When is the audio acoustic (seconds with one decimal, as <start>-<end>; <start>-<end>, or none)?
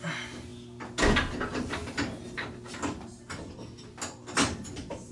0.0-5.1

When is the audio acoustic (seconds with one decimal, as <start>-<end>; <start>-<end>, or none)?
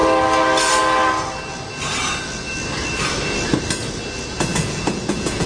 0.0-4.5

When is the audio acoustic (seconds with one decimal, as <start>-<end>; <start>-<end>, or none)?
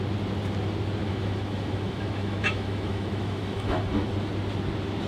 0.0-1.0; 4.1-5.1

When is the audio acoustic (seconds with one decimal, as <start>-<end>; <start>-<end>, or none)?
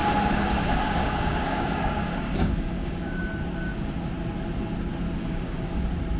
3.2-5.2; 5.8-6.2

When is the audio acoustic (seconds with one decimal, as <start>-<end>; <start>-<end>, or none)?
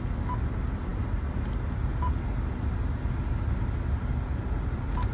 0.0-5.1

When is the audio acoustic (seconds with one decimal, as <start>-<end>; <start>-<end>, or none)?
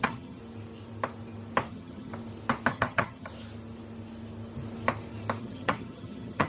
0.4-1.7; 2.1-2.7; 3.3-5.4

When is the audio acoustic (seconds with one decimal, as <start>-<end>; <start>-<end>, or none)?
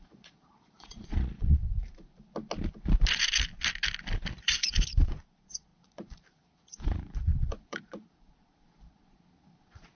1.6-4.4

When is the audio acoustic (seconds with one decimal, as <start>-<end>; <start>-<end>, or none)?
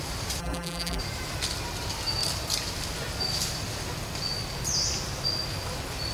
0.0-0.4; 1.0-6.1